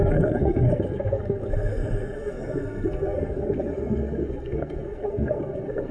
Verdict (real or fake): fake